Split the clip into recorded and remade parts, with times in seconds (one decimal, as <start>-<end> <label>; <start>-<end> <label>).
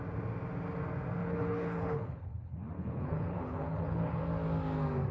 0.0-1.2 recorded; 1.2-4.2 remade; 4.2-5.1 recorded